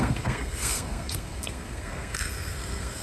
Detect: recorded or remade remade